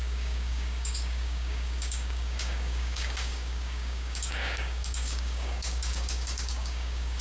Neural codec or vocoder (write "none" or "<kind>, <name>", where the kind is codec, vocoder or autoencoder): codec, DAC